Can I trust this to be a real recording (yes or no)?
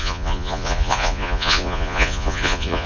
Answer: no